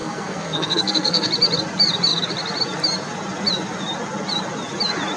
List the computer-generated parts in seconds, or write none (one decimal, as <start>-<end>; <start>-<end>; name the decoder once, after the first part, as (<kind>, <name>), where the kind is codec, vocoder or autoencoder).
0.0-1.3 (codec, SNAC)

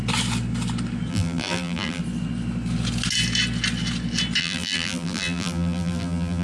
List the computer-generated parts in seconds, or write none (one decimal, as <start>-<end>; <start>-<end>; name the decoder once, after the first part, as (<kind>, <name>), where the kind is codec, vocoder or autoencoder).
1.1-2.0 (vocoder, BigVGAN v2); 4.4-6.4

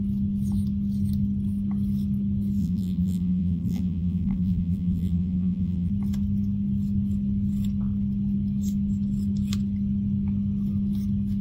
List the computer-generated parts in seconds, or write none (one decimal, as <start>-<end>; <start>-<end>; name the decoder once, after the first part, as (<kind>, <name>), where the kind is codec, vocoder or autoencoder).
2.6-5.9 (vocoder, BigVGAN v2)

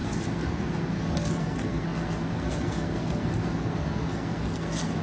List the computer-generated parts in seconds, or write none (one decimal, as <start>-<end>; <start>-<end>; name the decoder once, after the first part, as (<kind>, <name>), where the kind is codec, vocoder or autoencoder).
0.0-5.0 (codec, SNAC)

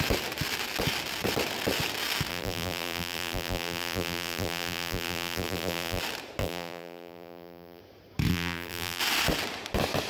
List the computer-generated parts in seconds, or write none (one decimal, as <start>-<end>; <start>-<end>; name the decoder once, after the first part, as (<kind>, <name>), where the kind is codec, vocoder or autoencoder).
2.3-6.0 (vocoder, BigVGAN v2); 6.4-7.8; 8.3-9.0

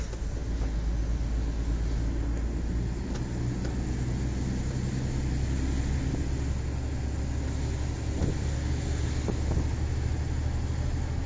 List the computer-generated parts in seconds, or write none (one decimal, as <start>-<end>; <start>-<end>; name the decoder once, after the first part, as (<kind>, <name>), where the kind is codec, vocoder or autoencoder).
none

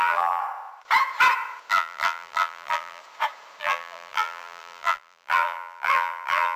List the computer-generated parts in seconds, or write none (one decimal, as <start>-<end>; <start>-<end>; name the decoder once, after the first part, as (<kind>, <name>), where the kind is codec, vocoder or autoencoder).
0.0-0.4 (vocoder, BigVGAN v2); 1.7-3.0; 3.6-6.6